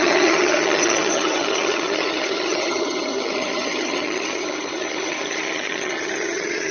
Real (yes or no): no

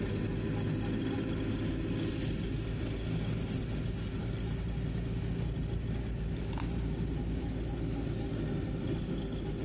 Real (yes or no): yes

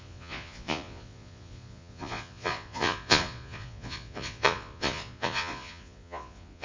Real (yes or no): no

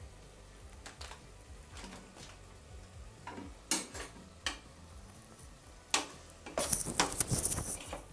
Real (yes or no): yes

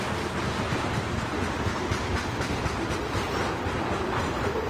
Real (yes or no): yes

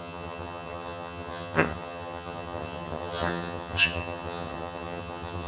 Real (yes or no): no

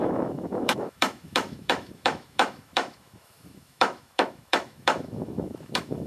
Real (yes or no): no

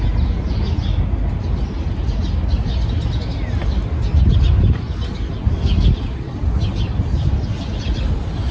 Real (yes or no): yes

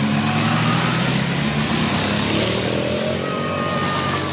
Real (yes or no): yes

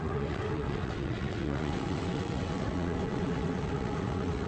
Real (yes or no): no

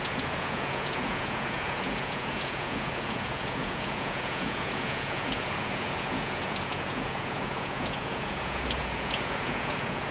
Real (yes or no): no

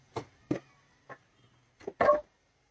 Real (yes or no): yes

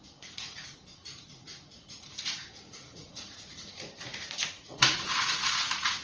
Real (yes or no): no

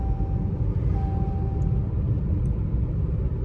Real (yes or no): yes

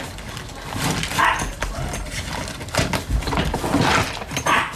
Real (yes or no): yes